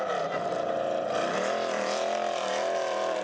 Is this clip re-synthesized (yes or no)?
yes